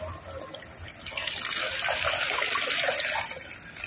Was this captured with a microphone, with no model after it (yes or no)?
yes